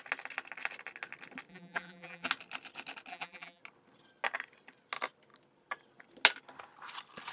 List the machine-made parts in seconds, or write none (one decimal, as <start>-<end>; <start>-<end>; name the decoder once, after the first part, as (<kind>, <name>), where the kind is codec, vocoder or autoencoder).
1.5-2.3 (vocoder, BigVGAN v2); 3.1-3.6